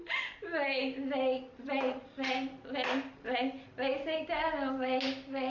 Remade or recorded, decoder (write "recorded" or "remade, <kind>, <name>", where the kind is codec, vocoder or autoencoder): recorded